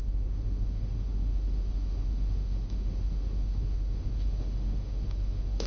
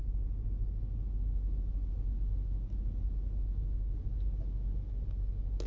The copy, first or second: first